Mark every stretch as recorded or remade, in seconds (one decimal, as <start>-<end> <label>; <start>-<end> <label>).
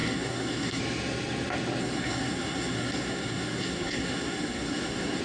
0.0-0.8 remade; 0.8-1.8 recorded; 1.8-5.2 remade